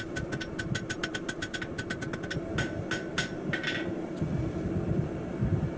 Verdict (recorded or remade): recorded